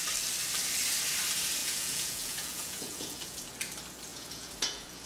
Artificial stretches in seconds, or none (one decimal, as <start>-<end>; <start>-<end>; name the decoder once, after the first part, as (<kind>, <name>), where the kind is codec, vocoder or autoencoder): 1.6-3.4 (vocoder, Vocos); 4.1-5.1